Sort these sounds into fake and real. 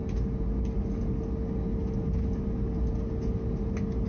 real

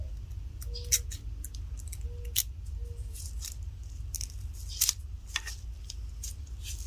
real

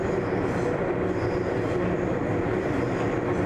real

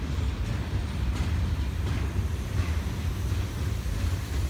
real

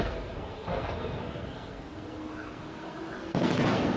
fake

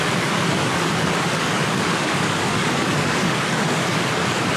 fake